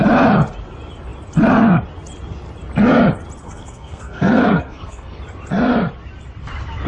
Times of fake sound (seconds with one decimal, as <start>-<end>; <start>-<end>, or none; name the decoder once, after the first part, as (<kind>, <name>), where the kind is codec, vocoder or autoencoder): 3.4-5.2 (codec, SNAC)